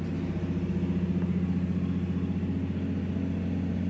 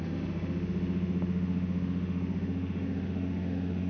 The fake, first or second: second